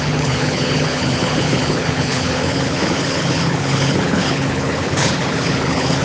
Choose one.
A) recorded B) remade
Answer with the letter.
B